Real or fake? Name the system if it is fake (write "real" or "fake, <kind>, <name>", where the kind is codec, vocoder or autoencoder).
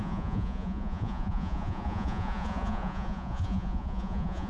fake, vocoder, Vocos